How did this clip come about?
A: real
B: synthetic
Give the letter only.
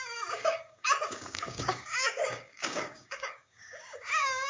B